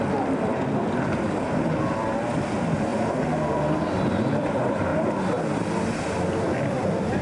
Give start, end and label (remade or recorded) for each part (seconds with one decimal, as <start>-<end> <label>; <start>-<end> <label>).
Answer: 0.0-2.9 remade; 2.9-4.1 recorded; 4.1-4.9 remade; 4.9-5.5 recorded; 5.5-7.2 remade